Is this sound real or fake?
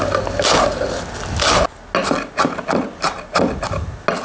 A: real